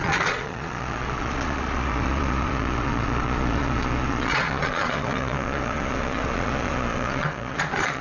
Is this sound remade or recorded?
remade